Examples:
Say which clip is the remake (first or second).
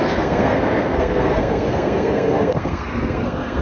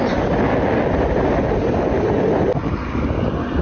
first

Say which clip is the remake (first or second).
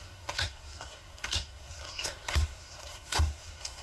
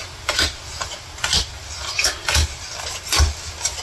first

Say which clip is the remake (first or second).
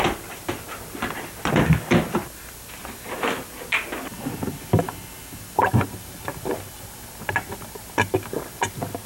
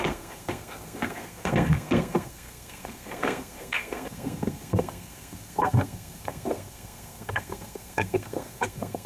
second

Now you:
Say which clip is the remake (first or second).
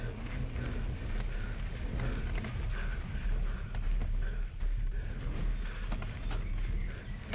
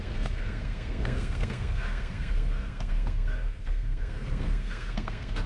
second